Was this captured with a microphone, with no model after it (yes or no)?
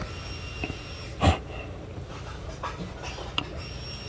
yes